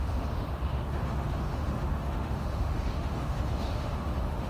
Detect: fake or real fake